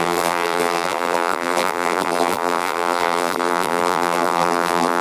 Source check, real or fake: fake